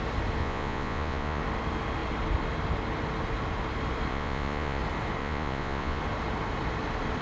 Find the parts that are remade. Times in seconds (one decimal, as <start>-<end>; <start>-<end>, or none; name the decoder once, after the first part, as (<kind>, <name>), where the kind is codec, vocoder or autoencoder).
0.4-1.4 (vocoder, Vocos); 4.1-4.8; 5.2-6.0